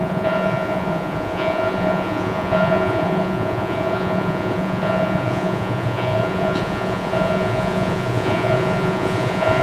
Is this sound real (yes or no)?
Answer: no